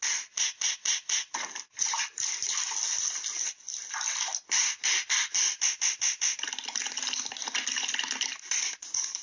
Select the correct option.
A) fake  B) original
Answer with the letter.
B